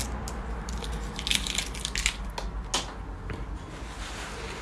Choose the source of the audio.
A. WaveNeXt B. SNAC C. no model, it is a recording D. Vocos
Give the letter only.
C